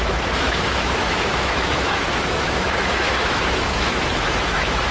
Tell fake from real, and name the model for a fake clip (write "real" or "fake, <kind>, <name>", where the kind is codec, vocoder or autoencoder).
fake, autoencoder, DAC-VAE